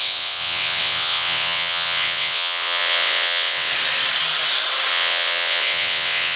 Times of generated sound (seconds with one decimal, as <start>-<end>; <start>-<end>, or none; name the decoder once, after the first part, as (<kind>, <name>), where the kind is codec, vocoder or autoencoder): 0.0-3.7 (vocoder, WaveNeXt); 4.9-6.4